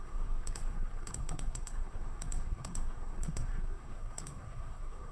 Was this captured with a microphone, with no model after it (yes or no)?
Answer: no